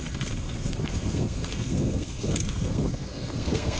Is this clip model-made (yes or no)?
yes